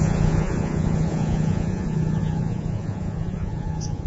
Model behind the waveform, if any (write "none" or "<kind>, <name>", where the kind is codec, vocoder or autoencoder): vocoder, Vocos